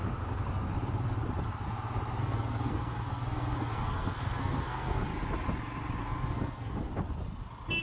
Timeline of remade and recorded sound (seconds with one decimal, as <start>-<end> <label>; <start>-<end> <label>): 0.0-2.2 recorded; 2.2-5.1 remade; 5.1-6.0 recorded; 6.0-6.9 remade; 6.9-7.8 recorded